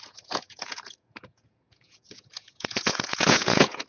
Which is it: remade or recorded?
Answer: remade